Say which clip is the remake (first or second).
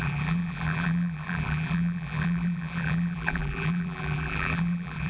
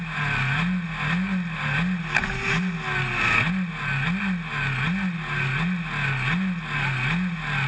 first